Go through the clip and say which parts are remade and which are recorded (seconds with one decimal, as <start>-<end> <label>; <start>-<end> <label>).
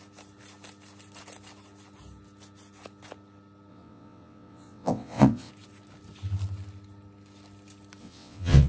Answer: 0.0-3.7 recorded; 3.7-5.5 remade; 5.5-8.0 recorded; 8.0-8.7 remade